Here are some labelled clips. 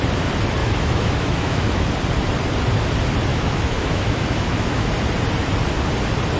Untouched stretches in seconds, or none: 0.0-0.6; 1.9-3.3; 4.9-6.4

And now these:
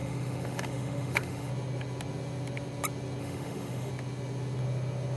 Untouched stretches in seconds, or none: 1.5-3.2; 3.9-5.2

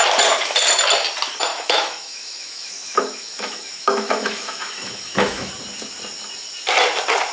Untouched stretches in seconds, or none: 0.0-1.5; 5.5-7.3

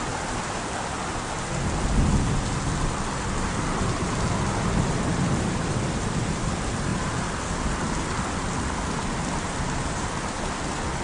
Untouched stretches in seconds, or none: 0.0-11.0

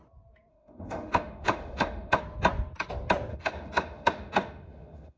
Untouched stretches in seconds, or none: 0.0-0.5; 2.2-3.3